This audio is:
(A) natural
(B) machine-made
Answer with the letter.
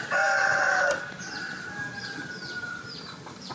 A